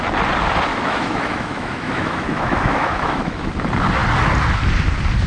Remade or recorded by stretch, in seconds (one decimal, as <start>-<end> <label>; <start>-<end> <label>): 0.0-0.7 recorded; 0.7-3.5 remade; 3.5-5.3 recorded